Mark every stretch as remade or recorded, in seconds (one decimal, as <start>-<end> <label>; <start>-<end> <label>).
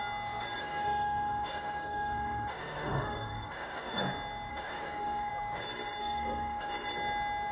0.0-0.6 recorded; 0.6-4.0 remade; 4.0-4.5 recorded; 4.5-5.3 remade; 5.3-6.0 recorded; 6.0-6.7 remade; 6.7-7.5 recorded